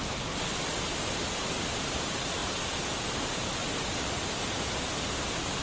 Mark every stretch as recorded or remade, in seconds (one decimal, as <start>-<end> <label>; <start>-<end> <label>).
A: 0.0-5.6 recorded